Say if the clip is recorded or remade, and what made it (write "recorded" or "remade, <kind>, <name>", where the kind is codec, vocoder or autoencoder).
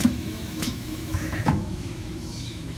remade, autoencoder, DAC-VAE